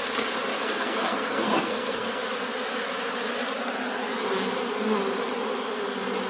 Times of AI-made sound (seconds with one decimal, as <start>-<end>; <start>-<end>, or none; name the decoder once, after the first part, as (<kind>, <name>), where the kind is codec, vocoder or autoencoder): 0.5-2.2 (codec, SNAC)